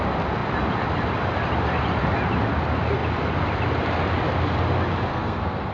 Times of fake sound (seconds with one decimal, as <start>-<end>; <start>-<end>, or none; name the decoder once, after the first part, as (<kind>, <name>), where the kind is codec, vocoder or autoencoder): 5.1-5.7 (codec, SNAC)